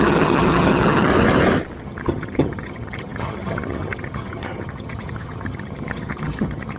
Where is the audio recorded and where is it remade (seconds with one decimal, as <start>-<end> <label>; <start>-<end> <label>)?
0.0-1.1 remade; 1.1-1.8 recorded; 1.8-6.8 remade

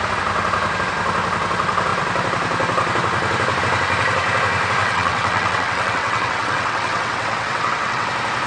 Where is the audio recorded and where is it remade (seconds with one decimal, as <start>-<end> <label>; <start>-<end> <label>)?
0.0-4.8 recorded; 4.8-8.1 remade; 8.1-8.5 recorded